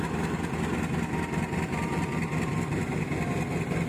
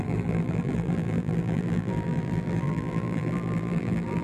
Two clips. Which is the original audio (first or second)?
first